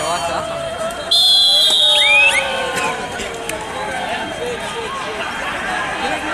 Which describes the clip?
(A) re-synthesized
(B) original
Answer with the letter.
B